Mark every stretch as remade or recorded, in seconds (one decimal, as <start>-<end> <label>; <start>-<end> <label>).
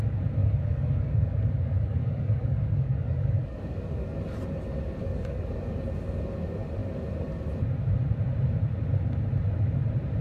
0.0-0.4 recorded; 0.4-4.2 remade; 4.2-5.0 recorded; 5.0-5.5 remade; 5.5-10.2 recorded